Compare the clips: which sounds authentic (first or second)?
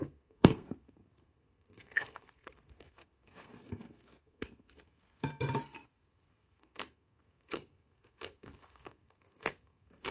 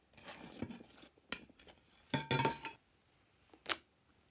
second